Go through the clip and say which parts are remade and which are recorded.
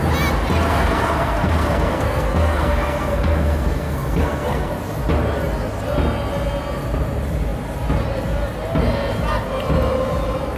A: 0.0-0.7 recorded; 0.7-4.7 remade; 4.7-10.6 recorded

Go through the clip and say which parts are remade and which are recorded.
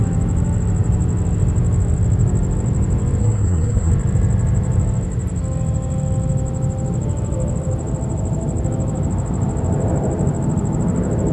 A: 0.0-3.2 recorded; 3.2-3.9 remade; 3.9-11.3 recorded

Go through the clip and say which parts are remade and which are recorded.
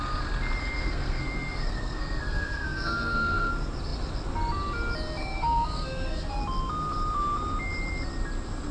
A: 0.0-0.6 recorded; 0.6-3.5 remade; 3.5-5.2 recorded; 5.2-6.4 remade; 6.4-8.7 recorded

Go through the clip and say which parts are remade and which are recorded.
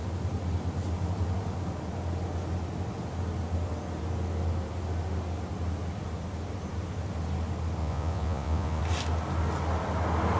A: 0.0-7.8 recorded; 7.8-8.8 remade; 8.8-10.4 recorded